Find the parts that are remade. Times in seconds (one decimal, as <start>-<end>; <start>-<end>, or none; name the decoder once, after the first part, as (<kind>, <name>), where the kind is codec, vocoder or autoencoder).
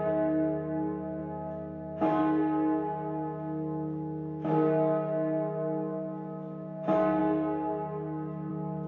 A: none